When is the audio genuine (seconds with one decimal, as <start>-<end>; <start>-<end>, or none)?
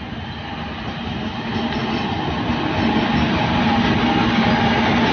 0.0-5.1